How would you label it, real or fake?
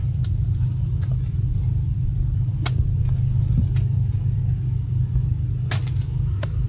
real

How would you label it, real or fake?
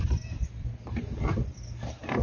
real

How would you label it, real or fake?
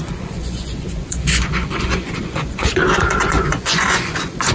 fake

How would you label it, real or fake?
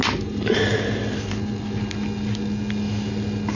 real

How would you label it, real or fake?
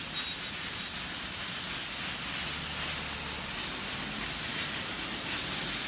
real